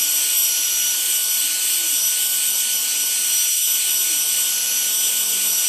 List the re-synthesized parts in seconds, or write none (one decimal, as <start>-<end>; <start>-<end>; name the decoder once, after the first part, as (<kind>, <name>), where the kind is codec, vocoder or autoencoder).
0.0-0.5 (vocoder, BigVGAN v2)